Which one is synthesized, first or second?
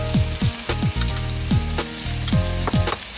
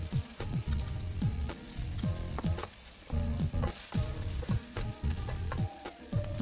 second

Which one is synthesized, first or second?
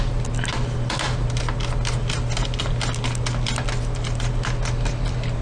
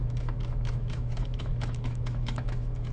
second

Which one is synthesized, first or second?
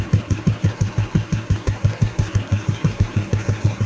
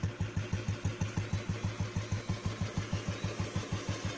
first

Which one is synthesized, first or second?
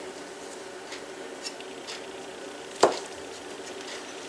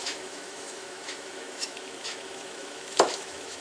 second